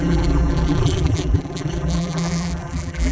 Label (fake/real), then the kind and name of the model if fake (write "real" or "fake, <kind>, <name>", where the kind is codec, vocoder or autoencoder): fake, vocoder, BigVGAN v2